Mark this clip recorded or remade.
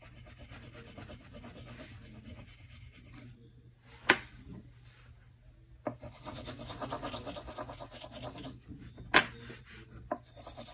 recorded